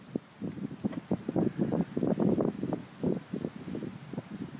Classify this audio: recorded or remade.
recorded